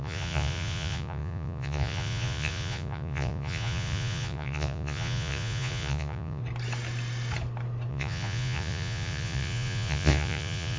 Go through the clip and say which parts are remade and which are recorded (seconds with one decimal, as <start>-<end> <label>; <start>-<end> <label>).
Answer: 0.0-6.4 remade; 6.4-7.9 recorded; 7.9-10.8 remade